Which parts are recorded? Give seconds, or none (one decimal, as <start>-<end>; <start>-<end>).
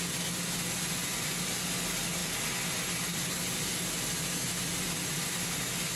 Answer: 0.0-6.0